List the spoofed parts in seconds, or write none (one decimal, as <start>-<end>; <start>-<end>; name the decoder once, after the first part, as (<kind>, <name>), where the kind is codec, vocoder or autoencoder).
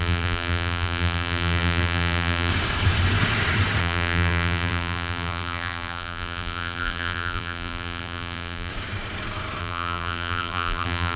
0.0-2.5 (vocoder, BigVGAN v2); 3.8-8.7; 9.6-11.2